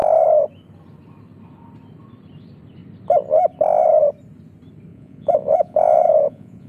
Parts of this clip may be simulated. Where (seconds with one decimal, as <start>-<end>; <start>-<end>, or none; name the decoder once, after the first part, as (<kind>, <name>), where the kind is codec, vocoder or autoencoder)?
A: 4.9-6.7 (vocoder, Vocos)